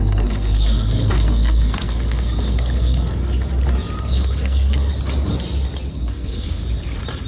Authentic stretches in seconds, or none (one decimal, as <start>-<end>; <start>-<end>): 3.2-4.0; 4.9-5.9; 6.6-7.3